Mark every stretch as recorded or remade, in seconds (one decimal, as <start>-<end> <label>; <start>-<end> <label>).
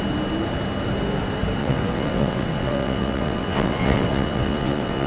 0.0-1.6 recorded; 1.6-5.1 remade